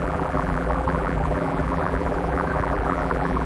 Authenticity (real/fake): fake